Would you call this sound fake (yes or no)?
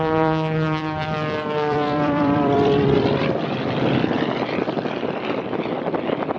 yes